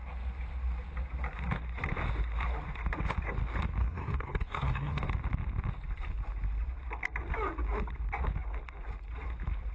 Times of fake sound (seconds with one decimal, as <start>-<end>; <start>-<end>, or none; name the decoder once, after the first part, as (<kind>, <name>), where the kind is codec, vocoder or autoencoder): 3.8-5.0 (codec, SNAC)